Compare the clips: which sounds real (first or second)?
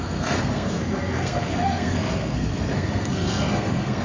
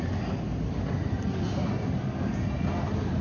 second